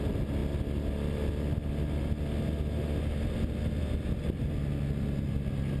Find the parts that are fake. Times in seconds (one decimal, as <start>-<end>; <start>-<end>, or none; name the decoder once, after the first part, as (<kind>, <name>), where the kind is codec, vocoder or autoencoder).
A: none